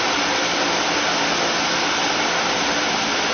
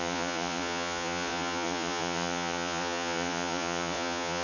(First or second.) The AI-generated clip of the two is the second